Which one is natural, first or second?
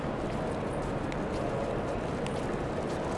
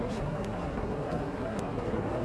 first